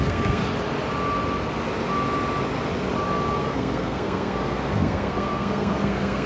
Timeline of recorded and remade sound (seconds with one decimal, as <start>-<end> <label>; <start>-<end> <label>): 0.0-0.4 remade; 0.4-3.4 recorded; 3.4-6.3 remade